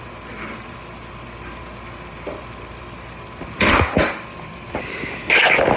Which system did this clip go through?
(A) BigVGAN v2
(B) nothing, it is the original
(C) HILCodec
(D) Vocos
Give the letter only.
B